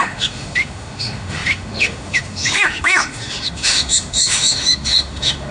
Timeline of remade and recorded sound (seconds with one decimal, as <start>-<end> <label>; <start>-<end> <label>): 0.0-5.5 remade